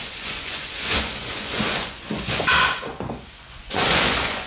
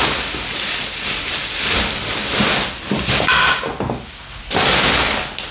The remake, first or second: first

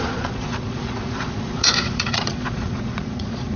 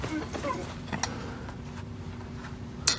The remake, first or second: first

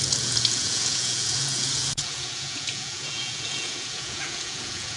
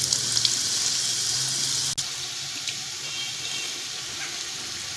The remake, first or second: first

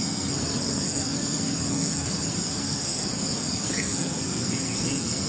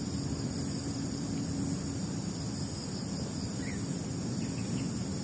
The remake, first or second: first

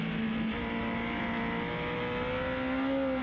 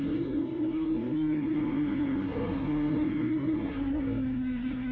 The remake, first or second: second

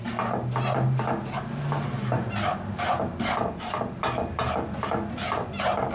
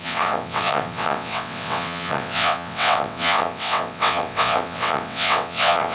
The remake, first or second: second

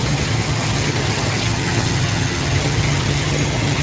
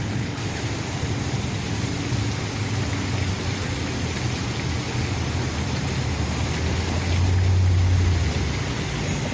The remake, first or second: first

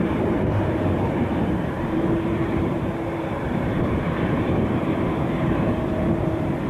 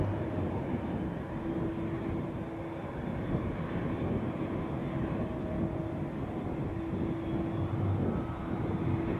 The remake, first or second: first